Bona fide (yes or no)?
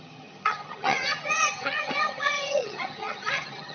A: no